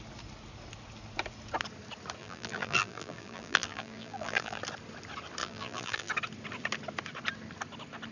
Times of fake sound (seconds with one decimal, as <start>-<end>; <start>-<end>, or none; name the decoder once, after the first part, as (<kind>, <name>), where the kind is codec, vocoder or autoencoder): 2.2-4.6 (vocoder, BigVGAN v2); 5.4-6.1